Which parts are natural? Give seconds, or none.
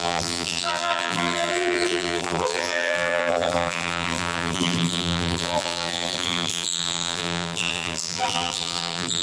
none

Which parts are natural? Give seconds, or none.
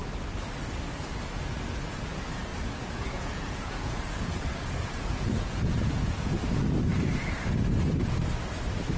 0.0-2.5; 6.3-9.0